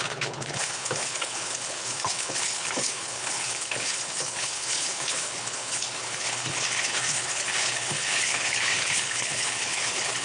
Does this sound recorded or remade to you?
remade